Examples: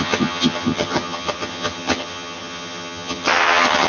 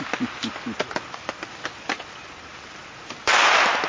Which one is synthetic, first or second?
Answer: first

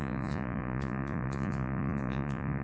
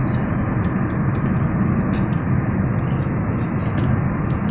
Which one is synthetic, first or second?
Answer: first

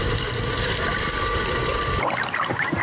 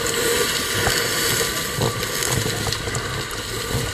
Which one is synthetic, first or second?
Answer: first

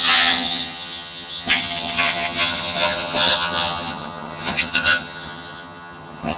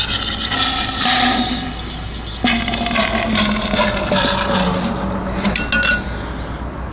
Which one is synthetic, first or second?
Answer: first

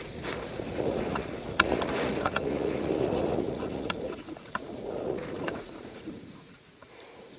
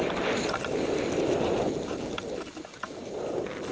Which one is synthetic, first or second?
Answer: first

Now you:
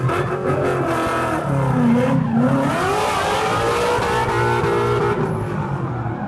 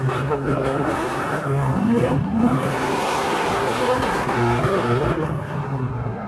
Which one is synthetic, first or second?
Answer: second